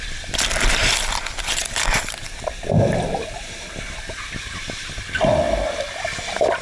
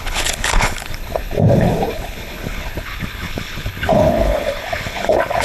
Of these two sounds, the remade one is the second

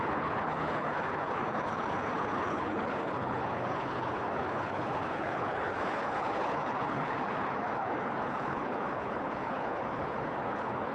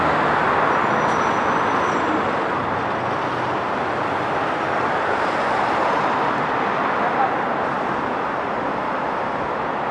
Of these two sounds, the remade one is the first